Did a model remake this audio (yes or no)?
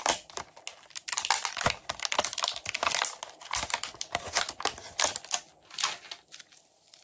no